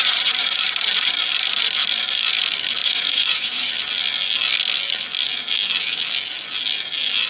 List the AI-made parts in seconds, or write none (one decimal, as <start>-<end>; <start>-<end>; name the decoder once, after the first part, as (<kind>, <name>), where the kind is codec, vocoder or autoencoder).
2.8-3.7 (vocoder, Vocos)